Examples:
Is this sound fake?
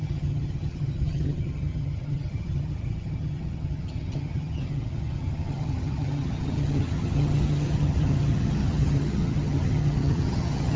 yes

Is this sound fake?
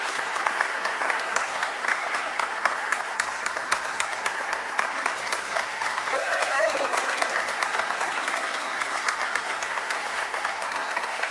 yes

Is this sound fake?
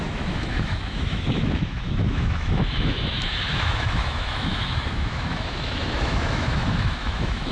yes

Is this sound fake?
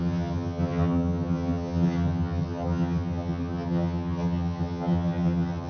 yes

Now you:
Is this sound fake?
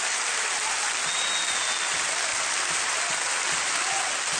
no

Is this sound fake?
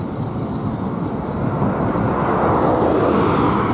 no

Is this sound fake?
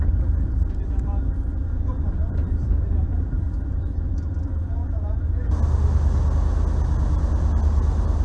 no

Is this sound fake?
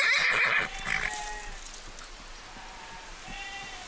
no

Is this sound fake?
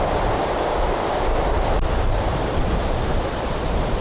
yes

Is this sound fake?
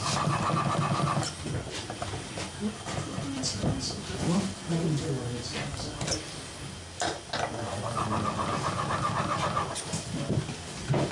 no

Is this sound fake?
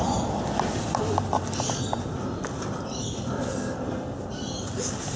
yes